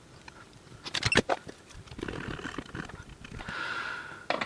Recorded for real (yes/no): yes